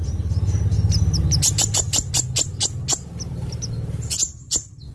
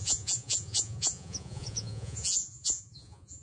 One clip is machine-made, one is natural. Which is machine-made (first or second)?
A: second